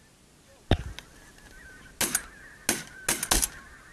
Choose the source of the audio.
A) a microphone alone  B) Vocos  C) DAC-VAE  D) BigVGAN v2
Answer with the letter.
A